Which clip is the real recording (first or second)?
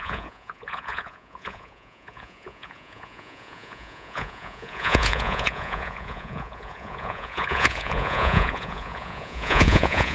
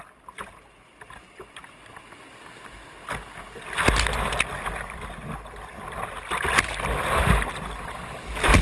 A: second